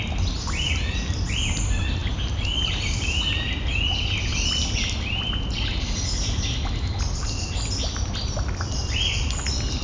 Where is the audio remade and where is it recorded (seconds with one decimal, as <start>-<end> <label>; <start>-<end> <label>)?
0.0-9.8 recorded